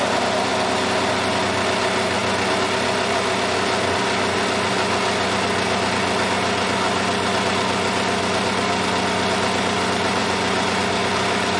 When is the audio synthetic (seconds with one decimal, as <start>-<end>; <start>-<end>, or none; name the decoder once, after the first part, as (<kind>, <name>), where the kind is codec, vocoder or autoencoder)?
10.2-10.8 (vocoder, Vocos)